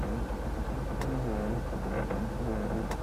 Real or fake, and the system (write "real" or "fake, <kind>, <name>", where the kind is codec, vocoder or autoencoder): real